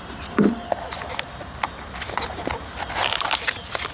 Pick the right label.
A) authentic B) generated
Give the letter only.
A